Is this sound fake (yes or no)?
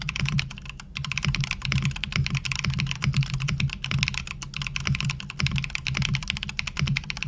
no